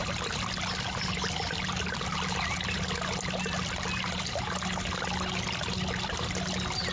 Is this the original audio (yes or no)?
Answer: yes